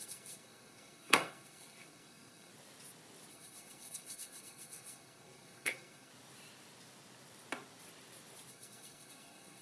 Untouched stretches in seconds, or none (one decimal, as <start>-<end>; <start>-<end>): 2.5-3.3; 6.1-8.5